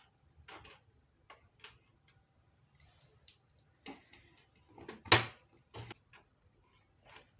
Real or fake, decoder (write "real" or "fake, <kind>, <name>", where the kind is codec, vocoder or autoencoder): real